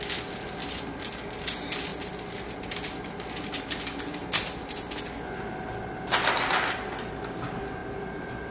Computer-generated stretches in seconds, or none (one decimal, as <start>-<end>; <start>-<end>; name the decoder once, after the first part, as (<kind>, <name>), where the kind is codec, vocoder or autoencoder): 7.8-8.5 (vocoder, BigVGAN v2)